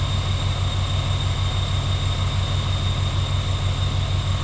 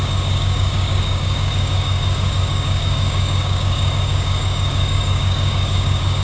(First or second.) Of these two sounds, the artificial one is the second